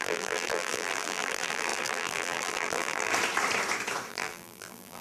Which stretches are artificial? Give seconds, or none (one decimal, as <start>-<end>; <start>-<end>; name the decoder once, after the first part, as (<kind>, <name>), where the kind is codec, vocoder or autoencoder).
0.0-3.1 (vocoder, BigVGAN v2); 4.1-5.0